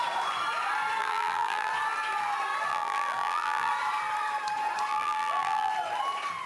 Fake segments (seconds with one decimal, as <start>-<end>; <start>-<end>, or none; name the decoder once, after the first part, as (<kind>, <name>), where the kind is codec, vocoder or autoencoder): 1.0-1.7 (vocoder, BigVGAN v2); 2.7-3.7; 4.9-5.7